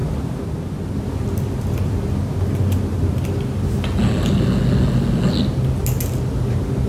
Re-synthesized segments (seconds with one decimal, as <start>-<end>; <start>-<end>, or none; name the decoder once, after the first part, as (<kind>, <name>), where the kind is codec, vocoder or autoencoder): none